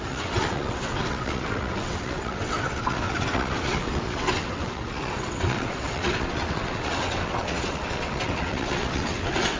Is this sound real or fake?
fake